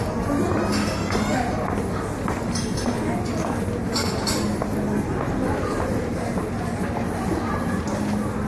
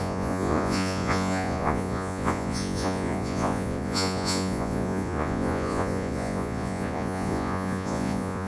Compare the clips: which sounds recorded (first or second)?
first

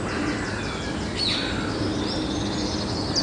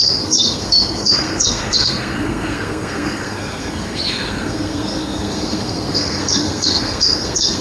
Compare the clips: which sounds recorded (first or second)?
first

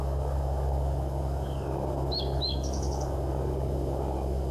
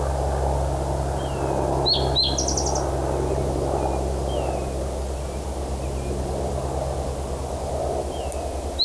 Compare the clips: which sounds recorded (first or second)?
second